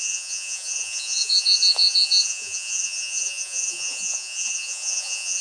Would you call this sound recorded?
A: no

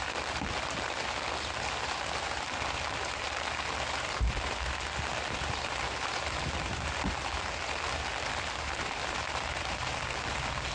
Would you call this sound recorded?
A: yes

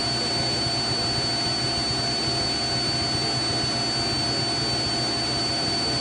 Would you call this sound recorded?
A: yes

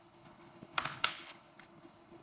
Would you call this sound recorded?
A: no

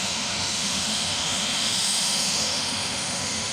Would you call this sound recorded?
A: no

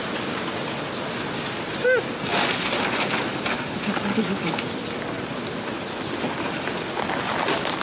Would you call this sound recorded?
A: yes